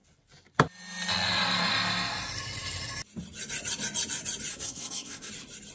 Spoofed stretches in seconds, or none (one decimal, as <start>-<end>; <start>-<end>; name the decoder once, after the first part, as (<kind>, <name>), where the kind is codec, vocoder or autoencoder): 4.5-5.3 (codec, SNAC)